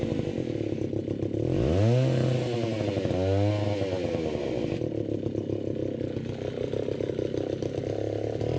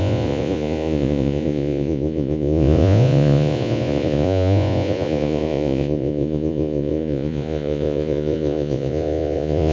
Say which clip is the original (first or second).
first